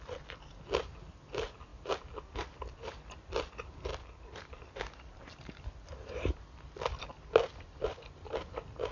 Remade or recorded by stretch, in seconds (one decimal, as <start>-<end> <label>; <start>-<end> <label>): 0.0-8.9 recorded